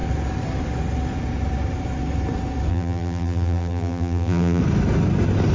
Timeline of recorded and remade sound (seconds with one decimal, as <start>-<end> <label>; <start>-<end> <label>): 0.0-2.7 recorded; 2.7-4.6 remade; 4.6-5.5 recorded